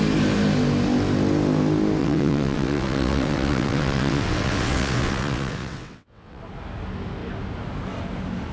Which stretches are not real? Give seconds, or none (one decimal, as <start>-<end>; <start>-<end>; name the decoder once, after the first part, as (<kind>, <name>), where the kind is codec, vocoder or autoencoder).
2.0-6.4 (vocoder, WaveNeXt)